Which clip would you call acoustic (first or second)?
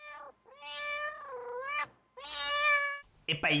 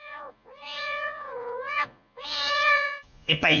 first